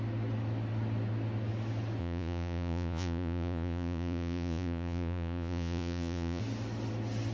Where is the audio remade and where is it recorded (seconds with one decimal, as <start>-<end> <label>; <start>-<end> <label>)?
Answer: 0.0-2.0 recorded; 2.0-6.4 remade; 6.4-7.3 recorded